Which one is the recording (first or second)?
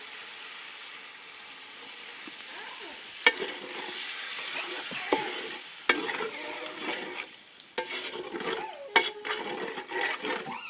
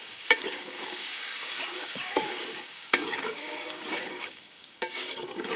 first